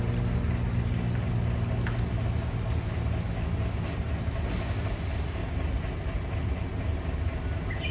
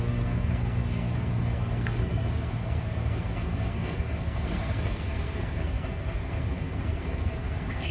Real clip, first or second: first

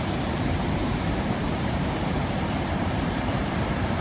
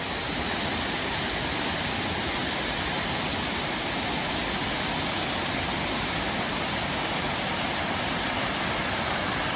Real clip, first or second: second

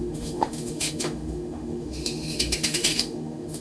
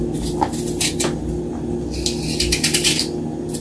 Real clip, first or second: second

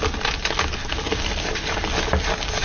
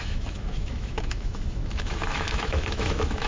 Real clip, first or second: first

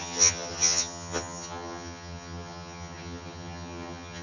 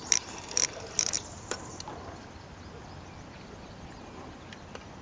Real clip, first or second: second